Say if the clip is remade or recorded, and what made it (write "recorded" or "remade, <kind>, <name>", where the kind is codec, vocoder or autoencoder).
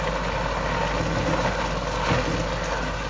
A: recorded